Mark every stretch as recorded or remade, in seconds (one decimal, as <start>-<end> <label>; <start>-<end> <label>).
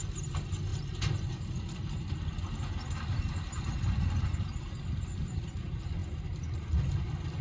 0.0-7.4 recorded